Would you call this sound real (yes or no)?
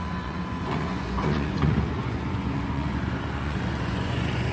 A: no